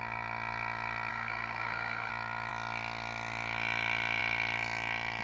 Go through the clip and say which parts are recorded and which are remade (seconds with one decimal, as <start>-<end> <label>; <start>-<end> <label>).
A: 0.0-1.1 recorded; 1.1-2.1 remade; 2.1-5.2 recorded